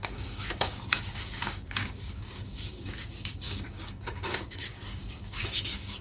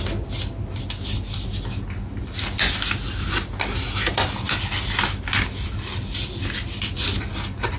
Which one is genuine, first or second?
second